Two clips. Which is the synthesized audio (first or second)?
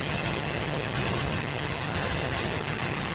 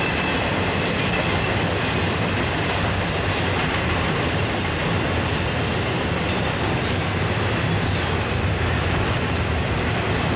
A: first